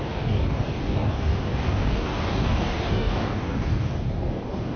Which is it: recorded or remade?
remade